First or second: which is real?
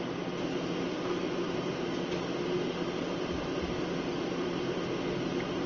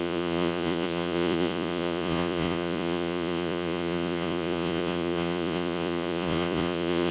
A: first